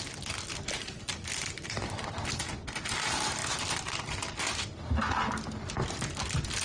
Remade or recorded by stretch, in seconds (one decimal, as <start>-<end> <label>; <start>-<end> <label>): 0.0-6.6 recorded